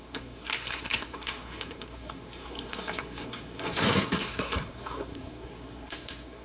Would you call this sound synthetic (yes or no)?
yes